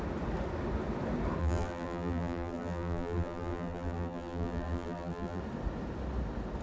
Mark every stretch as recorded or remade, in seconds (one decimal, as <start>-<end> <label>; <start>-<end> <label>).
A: 0.0-1.4 recorded; 1.4-5.4 remade; 5.4-6.6 recorded